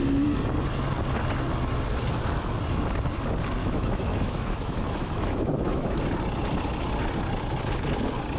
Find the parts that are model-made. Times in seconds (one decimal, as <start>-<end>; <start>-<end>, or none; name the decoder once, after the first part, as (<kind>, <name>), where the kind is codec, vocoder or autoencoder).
3.6-6.0 (autoencoder, DAC-VAE)